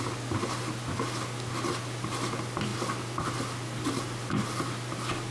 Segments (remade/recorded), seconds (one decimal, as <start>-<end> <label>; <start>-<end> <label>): 0.0-5.3 recorded